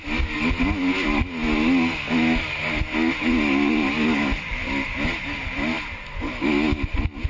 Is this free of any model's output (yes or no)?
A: yes